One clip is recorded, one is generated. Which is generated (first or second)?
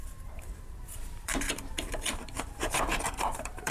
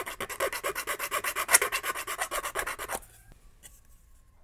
first